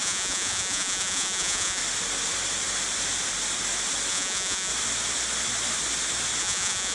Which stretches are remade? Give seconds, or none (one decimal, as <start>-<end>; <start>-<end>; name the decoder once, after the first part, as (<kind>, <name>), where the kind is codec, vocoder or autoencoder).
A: 0.0-1.8 (vocoder, Vocos); 4.1-4.7; 6.4-6.9